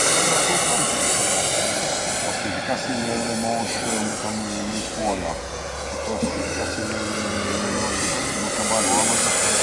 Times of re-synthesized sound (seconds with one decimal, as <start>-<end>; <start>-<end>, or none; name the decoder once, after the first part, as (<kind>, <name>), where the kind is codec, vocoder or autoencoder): 5.0-5.9 (vocoder, Vocos)